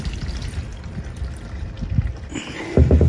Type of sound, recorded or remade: recorded